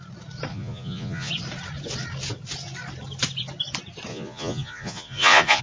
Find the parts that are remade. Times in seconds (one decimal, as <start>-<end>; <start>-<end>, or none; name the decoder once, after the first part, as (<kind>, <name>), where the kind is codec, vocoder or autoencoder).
0.5-1.3 (vocoder, Vocos); 4.1-5.6